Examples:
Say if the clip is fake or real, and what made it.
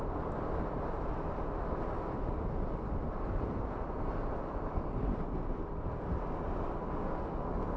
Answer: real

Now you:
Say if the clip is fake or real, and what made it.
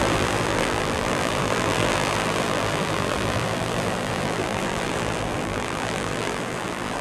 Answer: fake, vocoder, BigVGAN v2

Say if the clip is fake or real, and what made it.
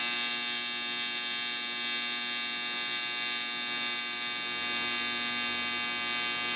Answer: real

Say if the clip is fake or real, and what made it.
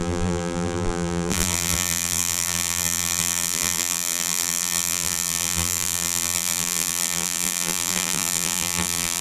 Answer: fake, vocoder, BigVGAN v2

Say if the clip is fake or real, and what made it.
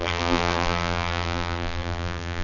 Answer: fake, vocoder, BigVGAN v2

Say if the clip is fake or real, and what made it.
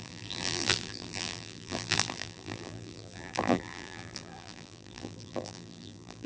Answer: fake, vocoder, BigVGAN v2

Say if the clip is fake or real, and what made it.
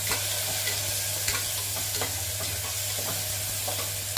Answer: real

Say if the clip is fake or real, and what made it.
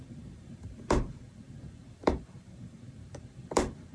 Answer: fake, vocoder, BigVGAN v2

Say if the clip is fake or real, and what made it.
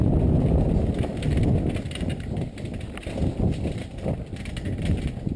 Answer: real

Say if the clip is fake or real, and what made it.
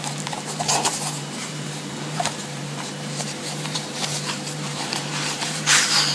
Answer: fake, vocoder, BigVGAN v2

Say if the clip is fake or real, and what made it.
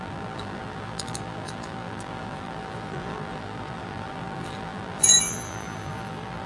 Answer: fake, vocoder, BigVGAN v2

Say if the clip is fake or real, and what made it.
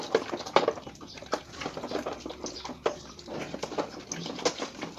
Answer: real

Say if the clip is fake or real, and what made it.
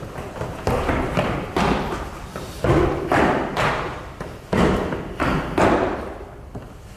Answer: real